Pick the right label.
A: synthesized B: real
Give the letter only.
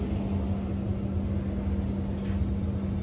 B